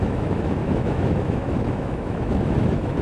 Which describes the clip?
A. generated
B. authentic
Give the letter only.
A